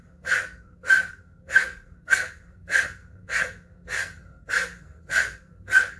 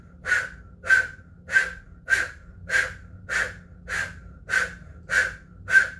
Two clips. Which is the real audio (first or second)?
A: second